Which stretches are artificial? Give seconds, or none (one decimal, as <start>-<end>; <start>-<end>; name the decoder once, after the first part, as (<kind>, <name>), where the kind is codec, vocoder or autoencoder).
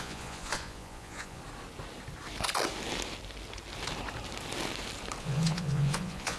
0.0-1.4 (vocoder, Vocos); 5.2-6.4